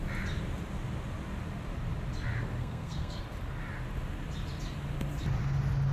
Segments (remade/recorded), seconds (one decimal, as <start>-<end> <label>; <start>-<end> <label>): 0.0-2.6 recorded; 2.6-3.2 remade; 3.2-5.9 recorded